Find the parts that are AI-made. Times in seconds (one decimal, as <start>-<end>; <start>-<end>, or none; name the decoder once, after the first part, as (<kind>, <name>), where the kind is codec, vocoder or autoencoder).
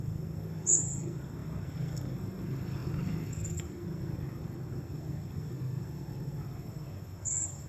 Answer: 0.0-7.7 (codec, SNAC)